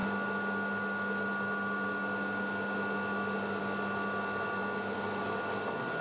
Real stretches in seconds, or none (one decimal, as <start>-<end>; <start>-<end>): 0.0-6.0